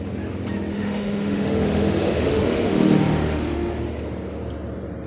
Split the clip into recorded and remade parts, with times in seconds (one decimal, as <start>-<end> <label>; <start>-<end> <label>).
0.0-0.7 recorded; 0.7-3.8 remade; 3.8-5.1 recorded